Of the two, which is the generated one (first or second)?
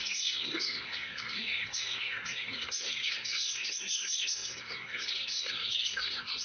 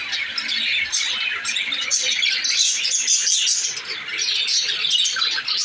first